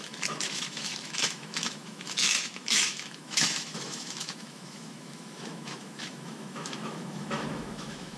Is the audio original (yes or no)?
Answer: no